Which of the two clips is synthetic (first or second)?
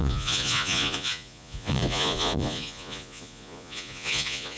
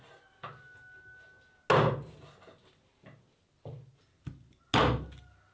first